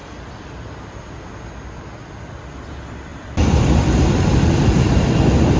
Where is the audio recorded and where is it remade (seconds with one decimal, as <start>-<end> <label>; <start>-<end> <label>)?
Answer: 0.0-2.0 recorded; 2.0-2.7 remade; 2.7-3.1 recorded; 3.1-5.0 remade; 5.0-5.6 recorded

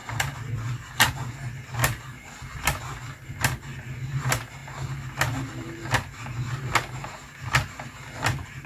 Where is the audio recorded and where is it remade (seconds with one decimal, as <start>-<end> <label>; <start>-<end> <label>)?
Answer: 0.0-0.9 remade; 0.9-1.8 recorded; 1.8-3.4 remade; 3.4-8.7 recorded

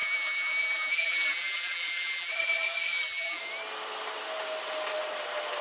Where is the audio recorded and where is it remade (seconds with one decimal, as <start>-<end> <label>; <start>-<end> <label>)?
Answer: 0.0-3.4 remade; 3.4-5.6 recorded